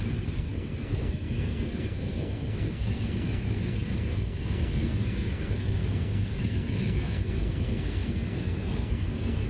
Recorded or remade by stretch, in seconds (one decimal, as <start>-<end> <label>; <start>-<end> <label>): 0.0-9.5 remade